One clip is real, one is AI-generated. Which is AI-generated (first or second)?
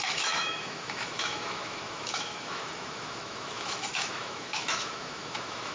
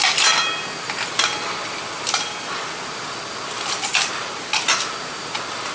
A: first